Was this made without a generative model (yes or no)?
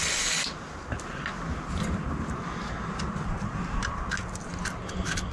yes